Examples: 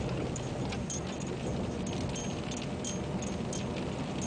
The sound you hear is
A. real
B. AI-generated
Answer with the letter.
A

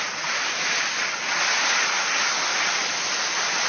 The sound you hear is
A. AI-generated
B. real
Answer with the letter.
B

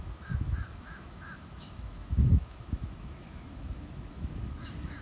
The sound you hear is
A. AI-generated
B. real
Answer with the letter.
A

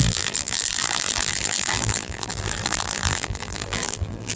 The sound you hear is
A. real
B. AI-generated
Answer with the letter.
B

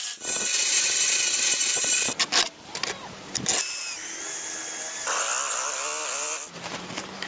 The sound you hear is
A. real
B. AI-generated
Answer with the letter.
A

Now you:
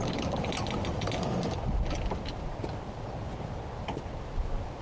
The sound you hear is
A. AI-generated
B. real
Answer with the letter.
B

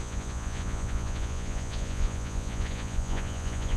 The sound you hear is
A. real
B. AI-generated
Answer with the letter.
B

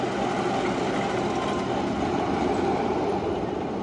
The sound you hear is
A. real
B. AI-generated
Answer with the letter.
A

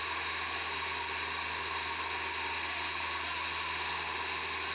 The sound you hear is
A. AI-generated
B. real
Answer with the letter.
B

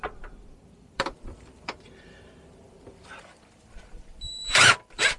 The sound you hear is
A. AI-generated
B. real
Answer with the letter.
A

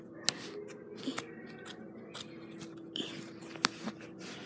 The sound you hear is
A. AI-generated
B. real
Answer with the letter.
B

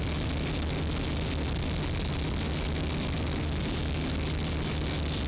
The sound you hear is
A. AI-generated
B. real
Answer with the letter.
B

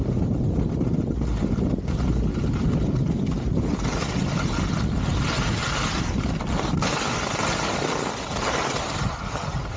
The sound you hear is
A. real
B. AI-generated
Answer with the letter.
A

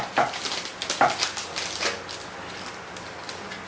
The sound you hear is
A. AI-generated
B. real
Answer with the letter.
B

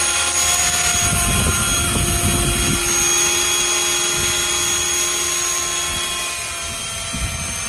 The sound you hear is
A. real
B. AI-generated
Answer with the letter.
A